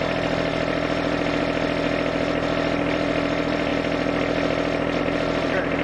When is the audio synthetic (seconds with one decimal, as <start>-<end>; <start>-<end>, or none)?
0.0-3.7; 5.0-5.8